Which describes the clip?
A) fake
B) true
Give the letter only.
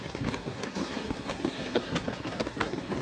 A